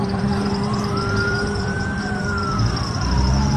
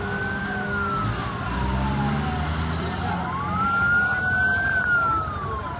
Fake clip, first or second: first